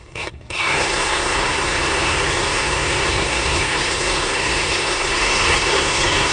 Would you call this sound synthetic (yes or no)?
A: yes